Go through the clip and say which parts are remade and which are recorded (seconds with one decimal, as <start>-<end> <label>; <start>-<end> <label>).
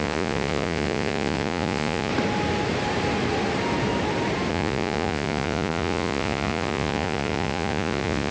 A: 0.0-2.1 remade; 2.1-4.5 recorded; 4.5-8.3 remade